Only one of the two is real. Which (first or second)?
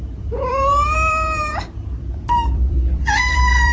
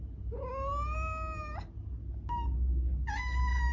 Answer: second